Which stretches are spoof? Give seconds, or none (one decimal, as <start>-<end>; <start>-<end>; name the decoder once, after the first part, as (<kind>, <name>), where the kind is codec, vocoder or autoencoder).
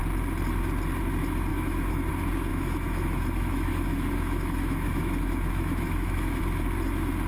1.5-2.1 (autoencoder, DAC-VAE); 2.5-6.4